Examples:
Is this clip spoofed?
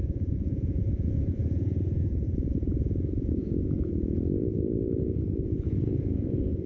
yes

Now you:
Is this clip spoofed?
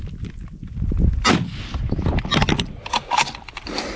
no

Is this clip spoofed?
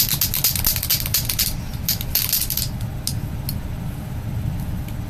no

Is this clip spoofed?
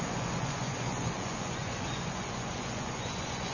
yes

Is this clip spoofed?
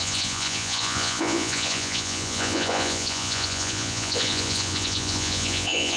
yes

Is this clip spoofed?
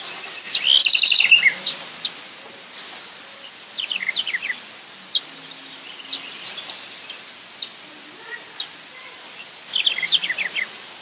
no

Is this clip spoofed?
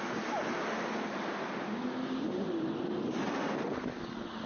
no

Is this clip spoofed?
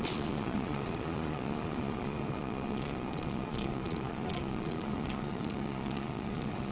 yes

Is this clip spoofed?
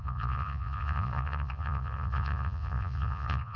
yes